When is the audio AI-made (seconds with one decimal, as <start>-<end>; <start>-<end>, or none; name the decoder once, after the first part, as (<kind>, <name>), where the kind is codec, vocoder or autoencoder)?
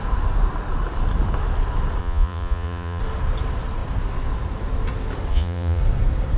2.0-3.0 (vocoder, Vocos); 5.3-5.8